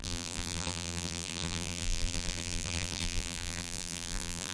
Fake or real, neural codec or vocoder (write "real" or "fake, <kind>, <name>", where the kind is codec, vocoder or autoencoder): fake, vocoder, BigVGAN v2